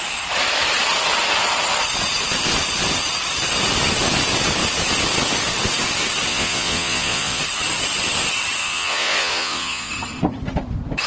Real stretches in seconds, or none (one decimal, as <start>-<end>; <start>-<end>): 0.0-6.3; 7.4-8.6; 9.9-11.1

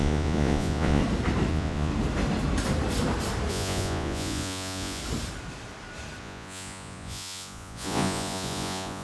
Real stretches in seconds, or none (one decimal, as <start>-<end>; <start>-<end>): 1.0-1.5; 1.9-3.5; 5.0-6.2

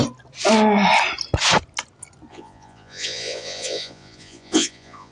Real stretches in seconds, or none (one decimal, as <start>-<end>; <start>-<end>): 0.0-2.3

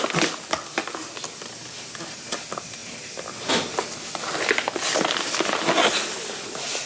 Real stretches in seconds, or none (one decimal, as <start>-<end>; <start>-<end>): 0.0-6.9

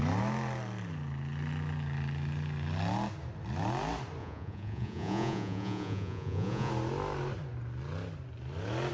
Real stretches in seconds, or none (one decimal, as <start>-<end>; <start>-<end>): 0.0-4.2; 6.7-8.9